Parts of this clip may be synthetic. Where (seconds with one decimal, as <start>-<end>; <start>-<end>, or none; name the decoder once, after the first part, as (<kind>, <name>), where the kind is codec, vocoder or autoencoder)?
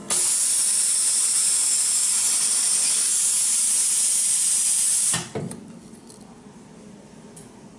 none